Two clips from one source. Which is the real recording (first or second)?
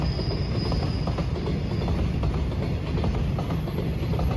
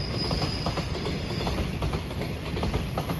first